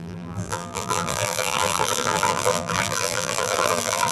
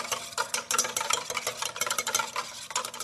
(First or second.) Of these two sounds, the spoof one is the first